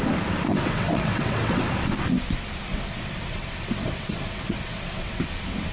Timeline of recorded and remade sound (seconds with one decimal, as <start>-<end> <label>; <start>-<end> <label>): 0.0-0.5 recorded; 0.5-1.6 remade; 1.6-2.7 recorded; 2.7-5.2 remade; 5.2-5.7 recorded